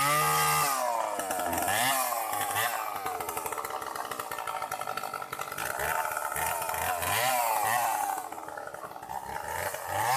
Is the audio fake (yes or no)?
no